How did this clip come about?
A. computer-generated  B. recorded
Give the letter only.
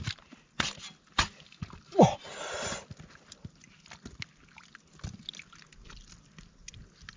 B